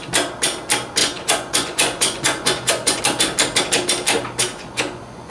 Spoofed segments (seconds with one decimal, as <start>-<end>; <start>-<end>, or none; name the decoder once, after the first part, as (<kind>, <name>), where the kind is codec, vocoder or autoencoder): 1.0-3.0 (vocoder, Vocos); 4.5-5.3